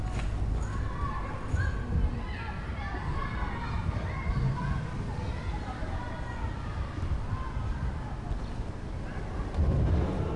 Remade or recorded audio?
recorded